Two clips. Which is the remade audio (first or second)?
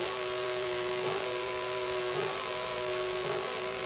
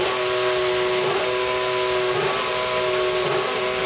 first